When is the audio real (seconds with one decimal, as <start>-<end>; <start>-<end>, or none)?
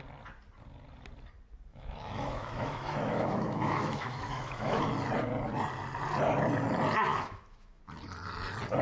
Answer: 0.0-1.7; 4.8-7.1; 7.8-8.8